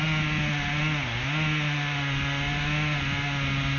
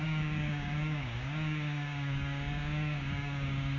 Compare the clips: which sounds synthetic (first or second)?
second